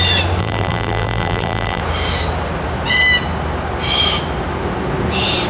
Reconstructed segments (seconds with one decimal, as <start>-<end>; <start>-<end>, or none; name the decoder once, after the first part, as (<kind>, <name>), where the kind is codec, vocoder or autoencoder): 0.4-1.8 (vocoder, BigVGAN v2)